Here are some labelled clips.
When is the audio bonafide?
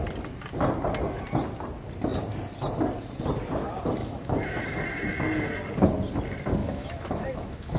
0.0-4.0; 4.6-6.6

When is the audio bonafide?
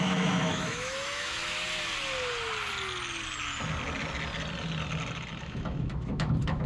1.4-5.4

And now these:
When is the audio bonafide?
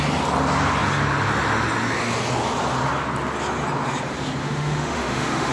0.0-4.4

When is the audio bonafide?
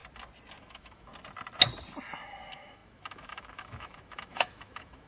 0.0-0.6; 1.1-2.4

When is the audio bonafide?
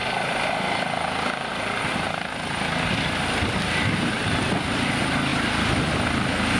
0.0-6.6